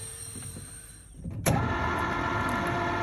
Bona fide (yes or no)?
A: no